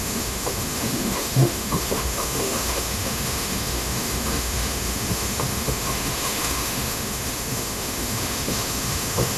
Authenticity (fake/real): fake